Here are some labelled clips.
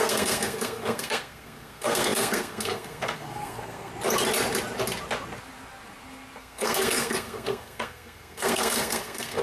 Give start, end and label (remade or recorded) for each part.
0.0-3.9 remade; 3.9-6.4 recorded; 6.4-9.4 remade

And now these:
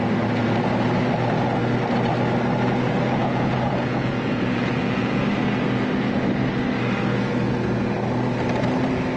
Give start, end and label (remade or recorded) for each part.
0.0-3.2 recorded; 3.2-5.2 remade; 5.2-9.2 recorded

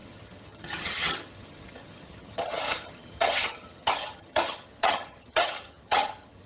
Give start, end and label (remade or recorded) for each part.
0.0-6.5 remade